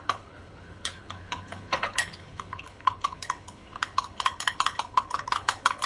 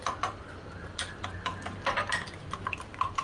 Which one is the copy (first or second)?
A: first